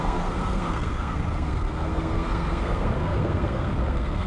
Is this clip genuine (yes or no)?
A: no